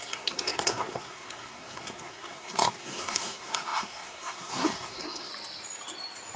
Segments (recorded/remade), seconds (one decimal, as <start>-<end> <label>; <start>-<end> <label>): 0.0-5.3 remade; 5.3-6.4 recorded